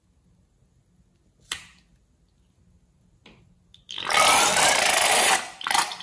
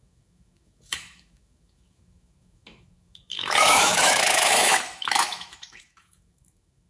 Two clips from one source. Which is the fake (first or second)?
second